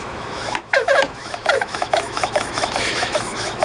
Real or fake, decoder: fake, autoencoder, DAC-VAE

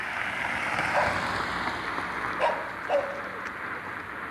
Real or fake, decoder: real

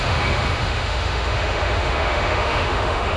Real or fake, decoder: fake, autoencoder, DAC-VAE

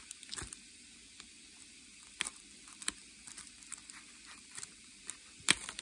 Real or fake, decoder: real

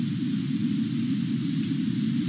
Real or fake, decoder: real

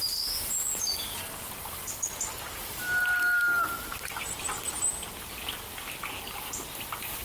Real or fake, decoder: real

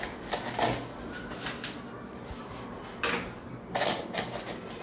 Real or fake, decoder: real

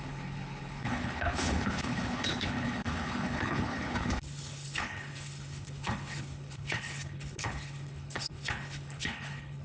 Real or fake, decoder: fake, codec, HILCodec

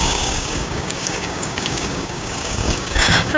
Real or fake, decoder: fake, codec, DAC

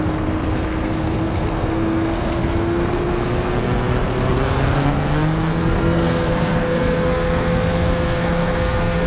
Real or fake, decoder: fake, codec, SNAC